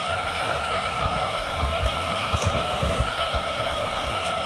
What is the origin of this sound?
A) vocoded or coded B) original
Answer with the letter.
A